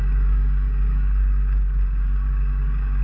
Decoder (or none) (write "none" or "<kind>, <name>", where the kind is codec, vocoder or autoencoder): codec, DAC